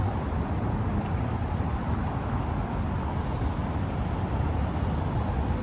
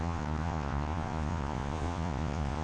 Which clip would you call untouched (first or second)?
first